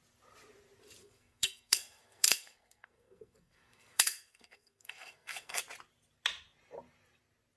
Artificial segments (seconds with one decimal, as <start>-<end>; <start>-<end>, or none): 1.0-5.6